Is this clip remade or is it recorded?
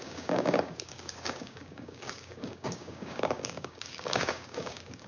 remade